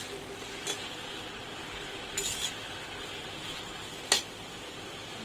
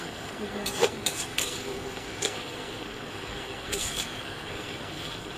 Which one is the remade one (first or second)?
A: second